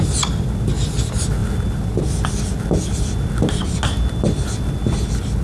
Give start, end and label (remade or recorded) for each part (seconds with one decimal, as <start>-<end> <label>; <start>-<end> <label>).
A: 0.0-5.4 recorded